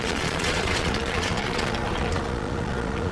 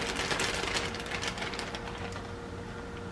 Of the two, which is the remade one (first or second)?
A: first